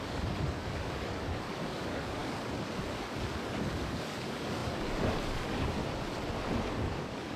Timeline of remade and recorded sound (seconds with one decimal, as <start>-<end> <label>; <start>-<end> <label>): 0.0-5.8 remade; 5.8-6.7 recorded; 6.7-7.4 remade